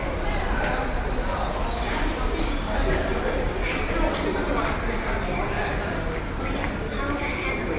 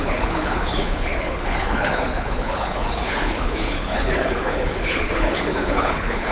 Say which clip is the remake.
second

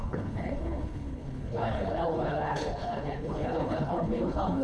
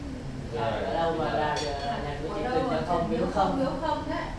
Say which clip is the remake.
first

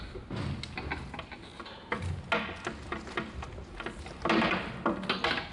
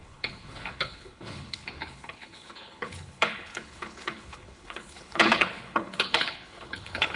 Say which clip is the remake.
second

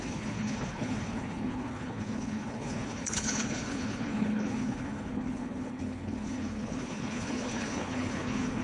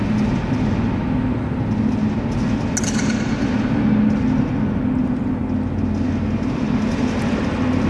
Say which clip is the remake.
first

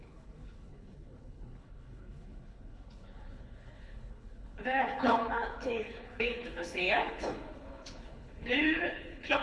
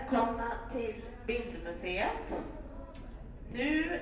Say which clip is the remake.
first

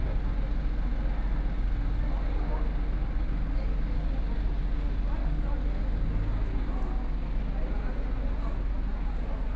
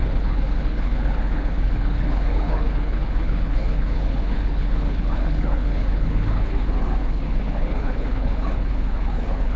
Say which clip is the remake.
second